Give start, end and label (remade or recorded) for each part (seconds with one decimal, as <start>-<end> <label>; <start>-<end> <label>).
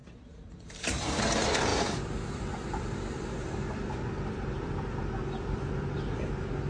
0.0-1.2 remade; 1.2-1.7 recorded; 1.7-5.7 remade; 5.7-6.7 recorded